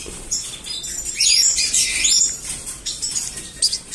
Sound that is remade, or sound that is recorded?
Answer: remade